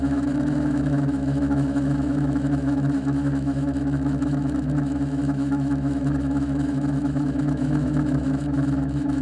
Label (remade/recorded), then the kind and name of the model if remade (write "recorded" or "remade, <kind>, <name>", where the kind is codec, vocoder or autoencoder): remade, autoencoder, DAC-VAE